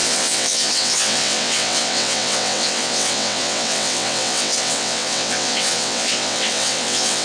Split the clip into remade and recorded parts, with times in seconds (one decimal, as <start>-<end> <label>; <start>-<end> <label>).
0.0-7.2 remade